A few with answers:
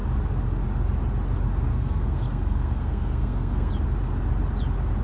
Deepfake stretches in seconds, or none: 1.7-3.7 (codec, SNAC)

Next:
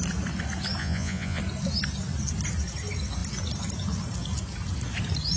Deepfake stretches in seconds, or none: 0.8-1.4 (vocoder, Vocos)

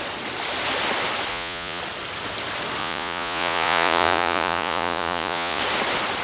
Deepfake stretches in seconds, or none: 1.3-1.8 (vocoder, Vocos); 2.8-5.6